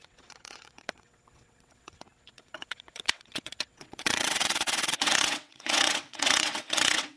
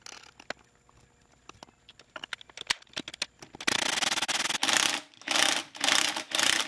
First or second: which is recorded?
second